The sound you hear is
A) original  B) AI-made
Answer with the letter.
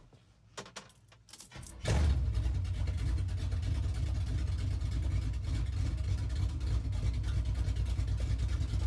A